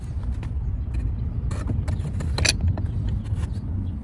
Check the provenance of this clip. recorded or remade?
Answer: recorded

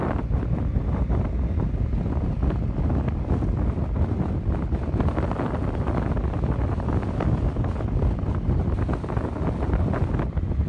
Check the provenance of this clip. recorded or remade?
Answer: recorded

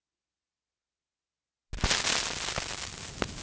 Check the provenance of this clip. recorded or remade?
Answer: recorded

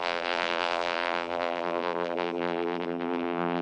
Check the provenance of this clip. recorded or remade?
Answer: remade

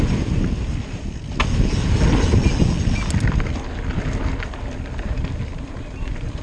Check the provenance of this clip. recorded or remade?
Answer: recorded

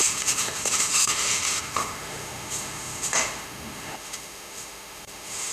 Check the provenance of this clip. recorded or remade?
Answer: remade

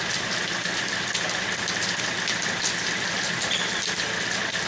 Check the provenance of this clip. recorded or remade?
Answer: recorded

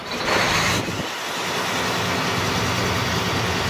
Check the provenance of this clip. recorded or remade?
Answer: recorded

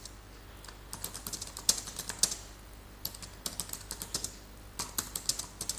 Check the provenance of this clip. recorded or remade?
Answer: recorded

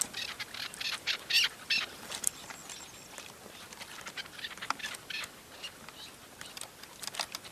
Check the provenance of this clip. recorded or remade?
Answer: recorded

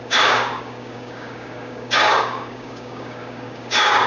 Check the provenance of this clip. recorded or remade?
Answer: remade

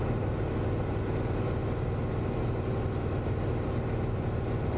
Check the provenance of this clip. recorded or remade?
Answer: recorded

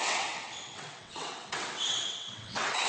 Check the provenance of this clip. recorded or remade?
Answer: remade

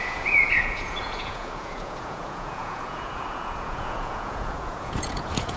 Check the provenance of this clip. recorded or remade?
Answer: remade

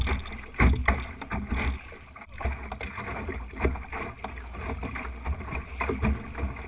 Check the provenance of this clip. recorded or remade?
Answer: recorded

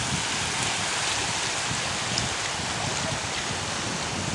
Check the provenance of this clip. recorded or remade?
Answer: recorded